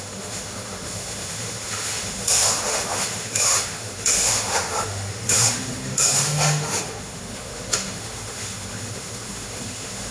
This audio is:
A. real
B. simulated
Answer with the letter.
B